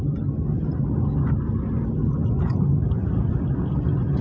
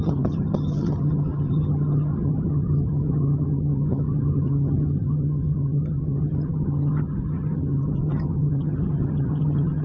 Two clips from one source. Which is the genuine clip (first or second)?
first